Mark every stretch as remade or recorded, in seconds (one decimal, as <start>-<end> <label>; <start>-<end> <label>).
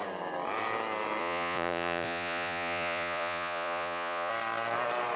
0.0-1.2 recorded; 1.2-4.3 remade; 4.3-5.2 recorded